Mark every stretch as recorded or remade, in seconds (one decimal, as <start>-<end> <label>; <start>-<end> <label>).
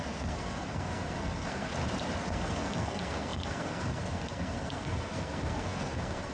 0.0-1.7 remade; 1.7-2.2 recorded; 2.2-6.3 remade